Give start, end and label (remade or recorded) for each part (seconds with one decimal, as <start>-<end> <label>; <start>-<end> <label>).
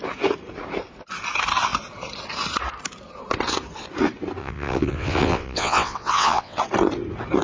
0.0-4.4 recorded; 4.4-6.6 remade; 6.6-7.4 recorded